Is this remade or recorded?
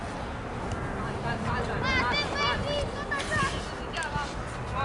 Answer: recorded